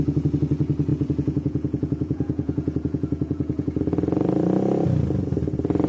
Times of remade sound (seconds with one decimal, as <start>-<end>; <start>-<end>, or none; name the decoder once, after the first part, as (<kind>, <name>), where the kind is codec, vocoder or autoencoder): 0.9-3.8 (vocoder, Vocos)